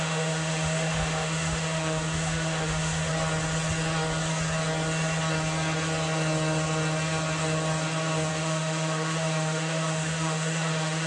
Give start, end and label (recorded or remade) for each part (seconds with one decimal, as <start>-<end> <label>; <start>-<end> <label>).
0.0-3.1 remade; 3.1-8.3 recorded; 8.3-11.1 remade